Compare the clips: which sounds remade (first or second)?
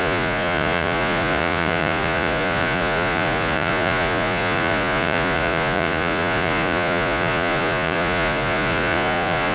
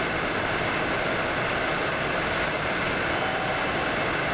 first